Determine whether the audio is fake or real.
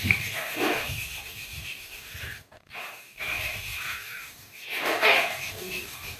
fake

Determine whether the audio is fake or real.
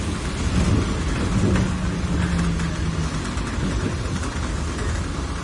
real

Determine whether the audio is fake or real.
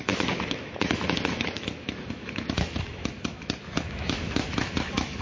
fake